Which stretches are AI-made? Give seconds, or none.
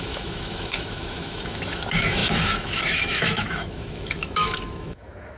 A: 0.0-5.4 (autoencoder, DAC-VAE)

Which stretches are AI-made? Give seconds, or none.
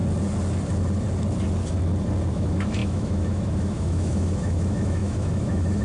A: 2.3-5.8 (autoencoder, DAC-VAE)